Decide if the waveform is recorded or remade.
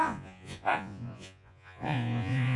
remade